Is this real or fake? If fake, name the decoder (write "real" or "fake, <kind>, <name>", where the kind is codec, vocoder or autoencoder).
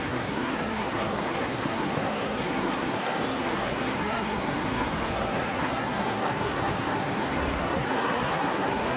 fake, codec, SNAC